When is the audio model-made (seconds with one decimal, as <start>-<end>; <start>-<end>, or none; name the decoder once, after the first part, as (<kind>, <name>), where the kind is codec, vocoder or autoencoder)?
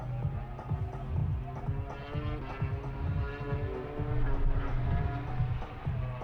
none